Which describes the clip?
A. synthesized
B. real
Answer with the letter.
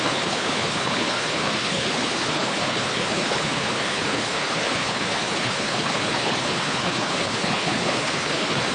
A